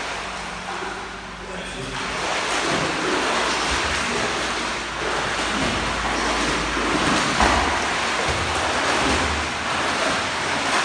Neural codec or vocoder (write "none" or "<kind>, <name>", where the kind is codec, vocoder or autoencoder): none